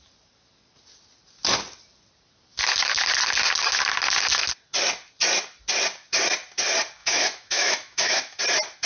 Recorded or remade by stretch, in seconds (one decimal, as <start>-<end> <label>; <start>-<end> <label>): 0.0-7.0 recorded; 7.0-8.4 remade; 8.4-8.9 recorded